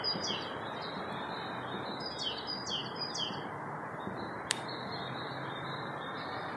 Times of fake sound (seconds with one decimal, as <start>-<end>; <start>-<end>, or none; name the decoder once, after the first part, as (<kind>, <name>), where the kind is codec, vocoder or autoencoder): none